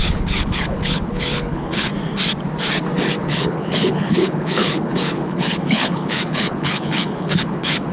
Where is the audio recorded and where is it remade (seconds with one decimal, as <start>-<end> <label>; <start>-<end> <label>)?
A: 0.0-1.9 remade; 1.9-3.2 recorded; 3.2-7.9 remade